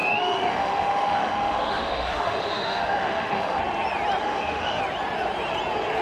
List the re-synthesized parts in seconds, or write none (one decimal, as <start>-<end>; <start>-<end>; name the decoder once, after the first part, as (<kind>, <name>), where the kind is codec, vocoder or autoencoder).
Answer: 0.0-3.6 (autoencoder, DAC-VAE); 4.2-4.8